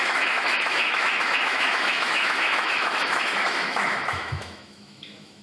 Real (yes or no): no